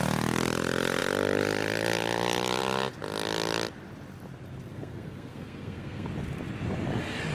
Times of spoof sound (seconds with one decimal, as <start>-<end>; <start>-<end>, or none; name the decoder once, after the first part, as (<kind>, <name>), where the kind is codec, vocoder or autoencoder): 4.7-6.1 (codec, SNAC)